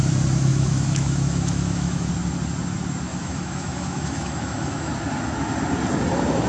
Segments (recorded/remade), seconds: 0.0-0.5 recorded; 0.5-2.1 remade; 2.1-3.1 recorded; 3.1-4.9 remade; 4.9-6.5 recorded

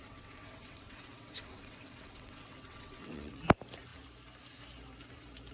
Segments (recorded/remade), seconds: 0.0-3.3 remade; 3.3-5.5 recorded

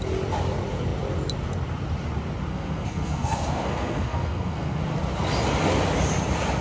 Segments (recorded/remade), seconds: 0.0-2.5 recorded; 2.5-4.8 remade; 4.8-6.6 recorded

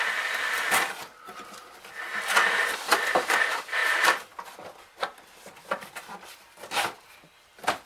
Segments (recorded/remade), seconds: 0.0-1.1 remade; 1.1-2.8 recorded; 2.8-7.9 remade

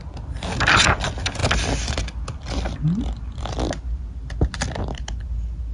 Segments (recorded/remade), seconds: 0.0-5.7 recorded